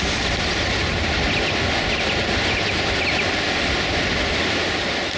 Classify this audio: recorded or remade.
recorded